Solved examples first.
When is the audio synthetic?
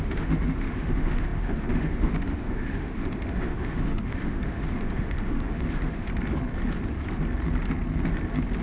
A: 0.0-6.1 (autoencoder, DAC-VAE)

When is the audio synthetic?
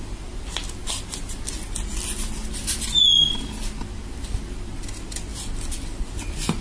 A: none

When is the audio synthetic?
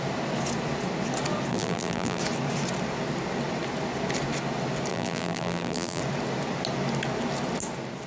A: 1.5-2.2 (vocoder, BigVGAN v2); 4.9-6.0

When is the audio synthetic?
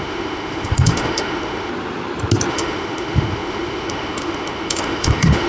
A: 0.0-1.7 (autoencoder, DAC-VAE); 2.5-5.5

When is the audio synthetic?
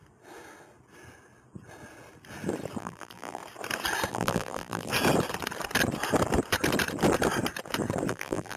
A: 2.8-3.4 (vocoder, BigVGAN v2); 4.1-4.9; 8.1-8.6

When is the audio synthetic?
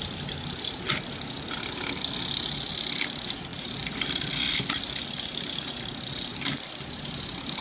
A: 3.5-4.3 (vocoder, BigVGAN v2)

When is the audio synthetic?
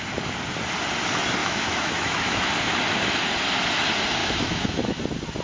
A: 1.4-2.5 (autoencoder, DAC-VAE); 4.2-5.0